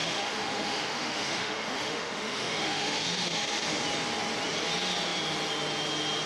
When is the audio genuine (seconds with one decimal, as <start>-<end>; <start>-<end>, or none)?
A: 3.8-6.3